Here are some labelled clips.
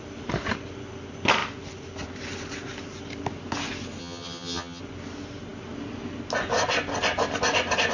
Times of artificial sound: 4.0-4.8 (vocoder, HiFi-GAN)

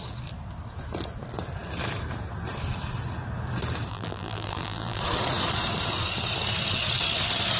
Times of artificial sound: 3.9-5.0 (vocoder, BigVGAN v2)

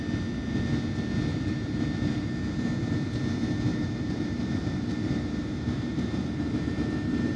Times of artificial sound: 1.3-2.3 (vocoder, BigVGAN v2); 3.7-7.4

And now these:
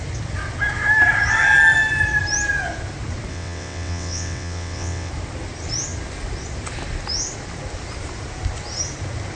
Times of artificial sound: 3.3-5.1 (vocoder, WaveNeXt)

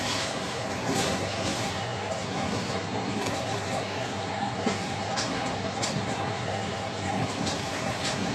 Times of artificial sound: 0.0-8.3 (codec, SNAC)

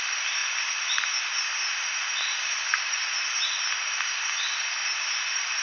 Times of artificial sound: 4.8-5.6 (vocoder, BigVGAN v2)

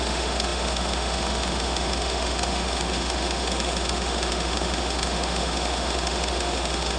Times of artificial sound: 0.0-7.0 (autoencoder, DAC-VAE)